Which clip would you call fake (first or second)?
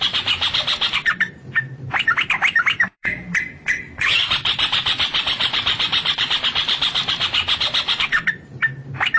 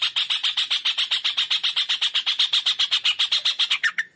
first